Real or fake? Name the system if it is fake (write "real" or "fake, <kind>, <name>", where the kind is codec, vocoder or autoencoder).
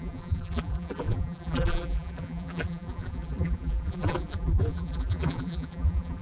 fake, vocoder, BigVGAN v2